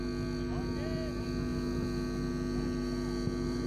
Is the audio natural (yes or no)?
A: yes